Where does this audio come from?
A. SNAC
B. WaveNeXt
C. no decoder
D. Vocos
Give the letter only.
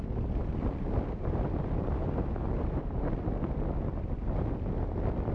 C